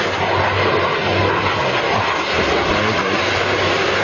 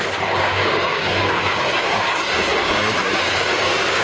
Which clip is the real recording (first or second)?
first